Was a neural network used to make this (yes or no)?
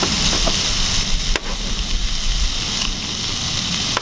no